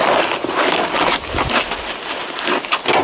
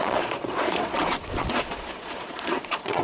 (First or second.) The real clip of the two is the first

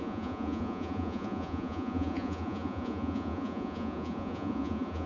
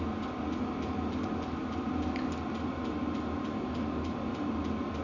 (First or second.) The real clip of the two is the second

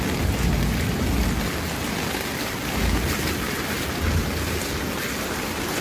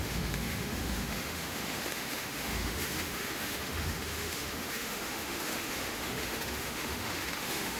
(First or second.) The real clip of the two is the first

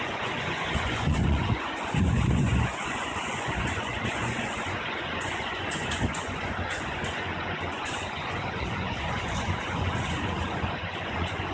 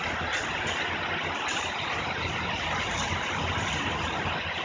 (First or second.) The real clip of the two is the second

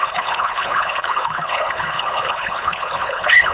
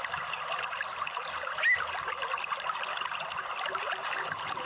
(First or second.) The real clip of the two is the second